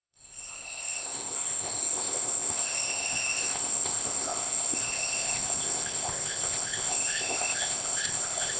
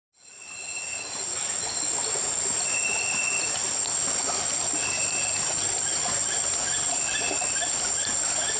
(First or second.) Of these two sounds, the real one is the second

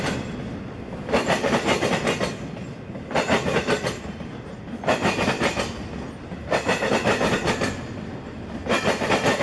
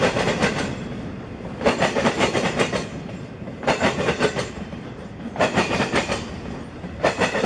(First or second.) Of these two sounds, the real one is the first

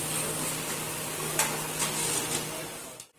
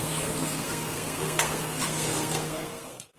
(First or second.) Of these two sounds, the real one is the first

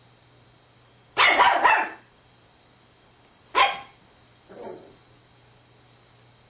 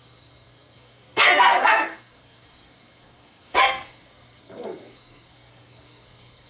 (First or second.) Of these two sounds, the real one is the first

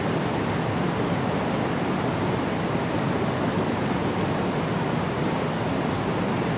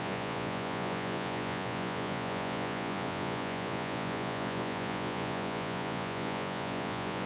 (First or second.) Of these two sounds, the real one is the first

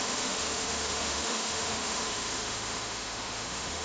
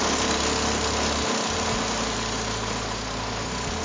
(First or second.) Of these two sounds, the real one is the second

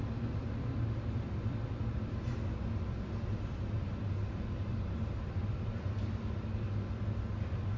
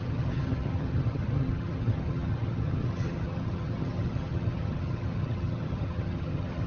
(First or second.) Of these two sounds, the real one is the first